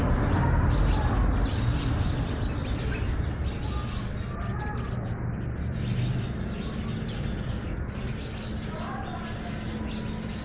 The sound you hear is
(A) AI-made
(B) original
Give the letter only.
B